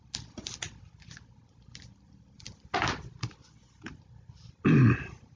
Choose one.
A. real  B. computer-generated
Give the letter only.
A